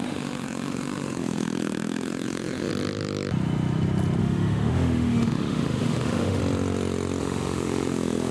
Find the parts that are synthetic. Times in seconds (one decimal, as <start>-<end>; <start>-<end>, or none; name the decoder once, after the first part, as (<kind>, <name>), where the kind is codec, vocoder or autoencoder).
0.0-2.7 (autoencoder, DAC-VAE); 4.2-6.4; 7.2-8.3